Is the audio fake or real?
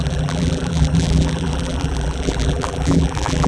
fake